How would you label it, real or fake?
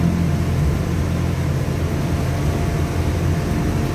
real